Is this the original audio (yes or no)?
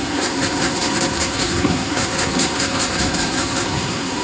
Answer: no